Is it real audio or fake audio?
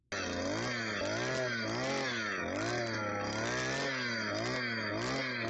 real